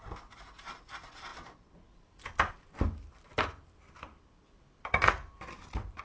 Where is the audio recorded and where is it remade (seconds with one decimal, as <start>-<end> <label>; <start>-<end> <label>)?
0.0-1.3 recorded; 1.3-2.7 remade; 2.7-3.3 recorded; 3.3-6.0 remade